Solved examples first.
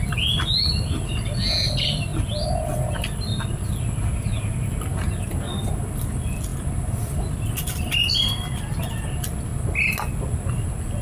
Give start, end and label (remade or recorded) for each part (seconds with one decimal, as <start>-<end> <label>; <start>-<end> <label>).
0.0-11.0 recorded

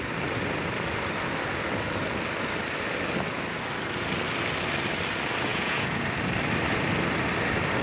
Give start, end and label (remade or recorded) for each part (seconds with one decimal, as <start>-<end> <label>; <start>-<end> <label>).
0.0-5.5 recorded; 5.5-6.0 remade; 6.0-7.8 recorded

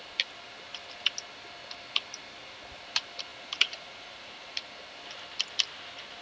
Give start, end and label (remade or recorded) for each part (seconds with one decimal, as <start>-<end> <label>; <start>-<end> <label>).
0.0-3.3 recorded; 3.3-4.6 remade; 4.6-6.2 recorded

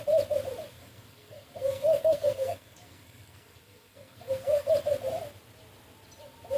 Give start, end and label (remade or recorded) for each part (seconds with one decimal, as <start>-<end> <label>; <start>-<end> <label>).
0.0-0.7 recorded; 0.7-4.7 remade; 4.7-6.6 recorded